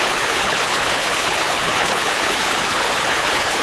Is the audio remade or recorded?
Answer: remade